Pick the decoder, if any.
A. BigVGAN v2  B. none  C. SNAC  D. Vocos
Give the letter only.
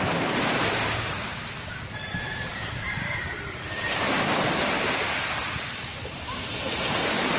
A